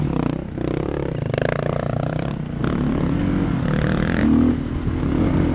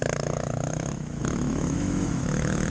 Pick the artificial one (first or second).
second